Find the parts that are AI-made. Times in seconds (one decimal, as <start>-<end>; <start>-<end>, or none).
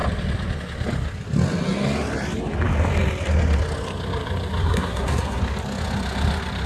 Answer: 4.6-5.4